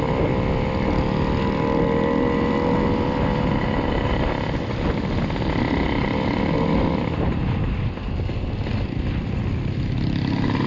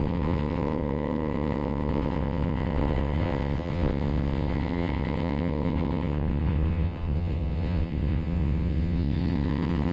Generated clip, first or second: second